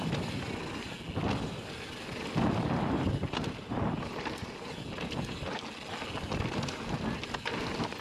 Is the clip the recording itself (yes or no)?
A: yes